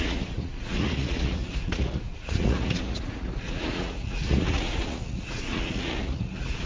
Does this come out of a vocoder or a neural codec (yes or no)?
yes